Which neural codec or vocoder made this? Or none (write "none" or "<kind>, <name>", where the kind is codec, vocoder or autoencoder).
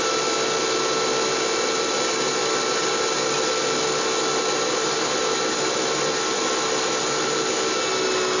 none